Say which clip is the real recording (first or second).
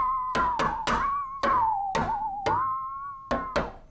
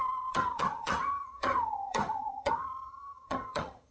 first